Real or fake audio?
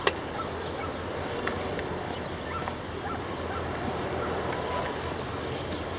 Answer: real